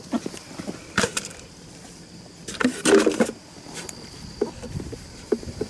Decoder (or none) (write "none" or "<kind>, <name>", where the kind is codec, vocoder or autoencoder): vocoder, BigVGAN v2